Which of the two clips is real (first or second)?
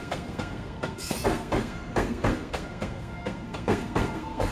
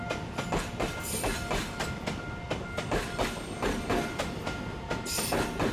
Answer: second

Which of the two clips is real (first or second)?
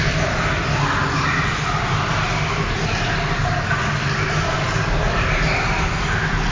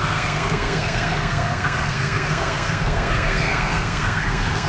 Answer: first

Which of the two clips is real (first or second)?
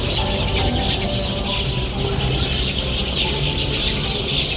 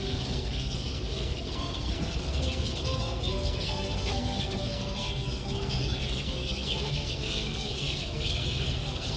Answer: first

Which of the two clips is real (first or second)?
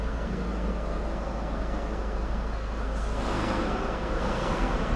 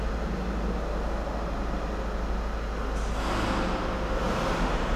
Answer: second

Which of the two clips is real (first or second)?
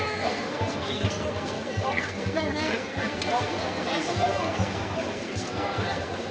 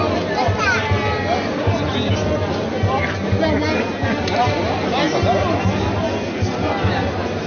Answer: second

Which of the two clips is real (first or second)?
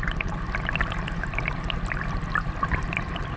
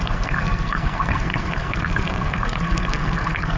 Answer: first